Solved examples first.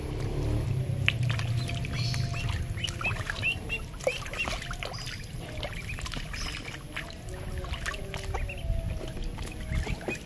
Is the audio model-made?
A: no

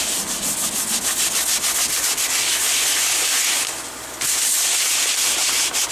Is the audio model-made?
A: no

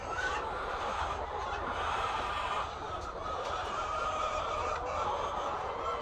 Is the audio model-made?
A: yes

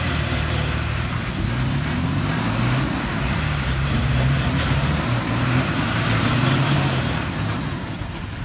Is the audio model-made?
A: yes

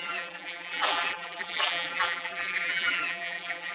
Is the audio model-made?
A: yes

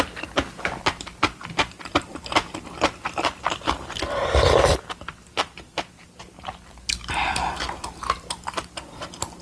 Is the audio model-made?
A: yes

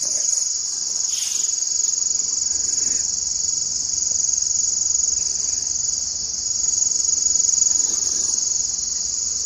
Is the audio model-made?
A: no